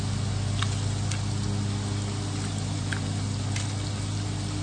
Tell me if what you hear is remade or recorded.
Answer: recorded